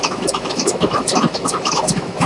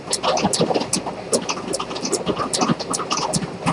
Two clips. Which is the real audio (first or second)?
second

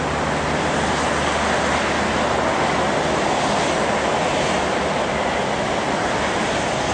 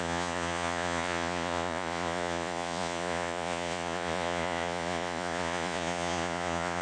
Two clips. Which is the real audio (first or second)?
first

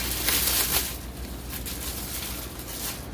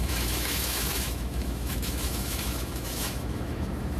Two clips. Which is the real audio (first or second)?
first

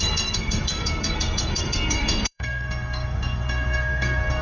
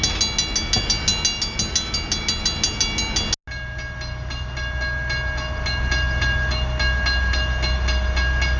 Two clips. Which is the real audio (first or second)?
second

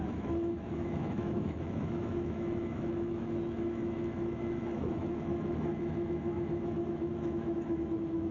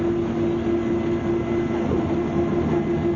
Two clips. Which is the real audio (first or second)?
second